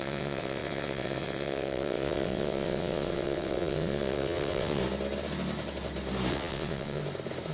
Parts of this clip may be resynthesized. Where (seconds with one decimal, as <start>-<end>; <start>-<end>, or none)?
0.0-4.8; 6.3-7.0